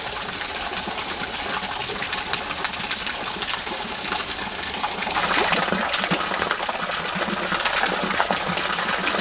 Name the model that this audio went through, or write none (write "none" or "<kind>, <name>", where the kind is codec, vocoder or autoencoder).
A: none